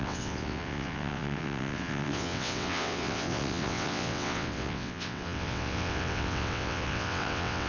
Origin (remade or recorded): remade